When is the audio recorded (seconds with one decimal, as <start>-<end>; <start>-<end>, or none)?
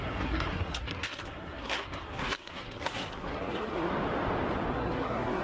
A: 3.9-4.7